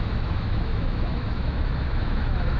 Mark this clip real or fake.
fake